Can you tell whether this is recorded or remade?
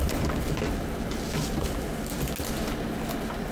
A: recorded